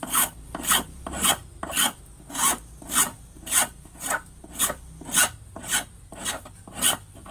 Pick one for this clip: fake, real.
real